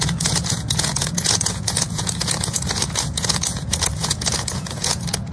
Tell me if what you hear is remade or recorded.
remade